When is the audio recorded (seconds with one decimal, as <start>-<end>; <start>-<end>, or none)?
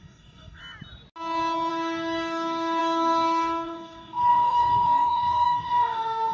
0.6-1.7